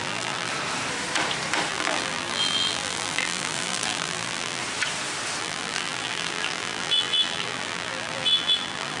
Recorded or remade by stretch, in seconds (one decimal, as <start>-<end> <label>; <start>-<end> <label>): 0.0-0.5 remade; 0.5-1.7 recorded; 1.7-4.6 remade; 4.6-5.4 recorded; 5.4-9.0 remade